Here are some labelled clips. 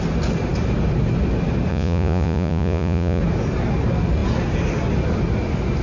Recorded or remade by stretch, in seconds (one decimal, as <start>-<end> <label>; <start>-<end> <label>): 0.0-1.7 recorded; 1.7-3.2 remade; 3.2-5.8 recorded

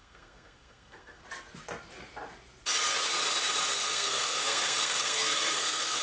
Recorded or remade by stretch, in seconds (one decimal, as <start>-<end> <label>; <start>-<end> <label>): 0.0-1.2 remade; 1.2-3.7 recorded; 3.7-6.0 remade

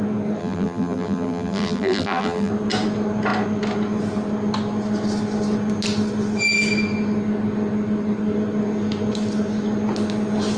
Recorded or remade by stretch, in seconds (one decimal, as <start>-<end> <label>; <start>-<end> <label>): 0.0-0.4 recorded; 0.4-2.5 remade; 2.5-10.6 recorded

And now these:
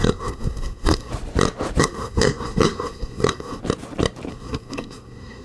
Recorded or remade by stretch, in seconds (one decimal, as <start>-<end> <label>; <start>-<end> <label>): 0.0-1.1 remade; 1.1-1.8 recorded; 1.8-3.6 remade; 3.6-4.3 recorded; 4.3-5.4 remade

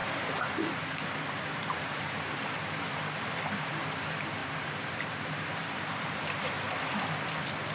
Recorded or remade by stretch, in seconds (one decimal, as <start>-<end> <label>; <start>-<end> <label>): 0.0-3.0 remade; 3.0-4.4 recorded; 4.4-6.5 remade; 6.5-7.7 recorded

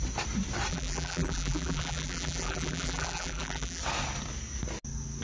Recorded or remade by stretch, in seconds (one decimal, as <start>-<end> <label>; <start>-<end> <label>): 0.0-0.7 recorded; 0.7-3.8 remade; 3.8-5.2 recorded